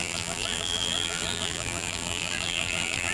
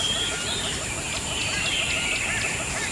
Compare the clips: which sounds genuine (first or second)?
second